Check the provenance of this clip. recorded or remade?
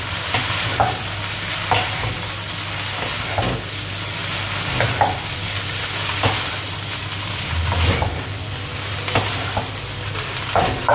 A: recorded